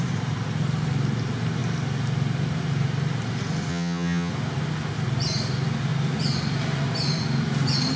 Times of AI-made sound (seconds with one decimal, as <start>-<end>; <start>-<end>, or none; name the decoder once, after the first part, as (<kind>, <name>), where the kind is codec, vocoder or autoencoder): 3.7-4.3 (vocoder, HiFi-GAN)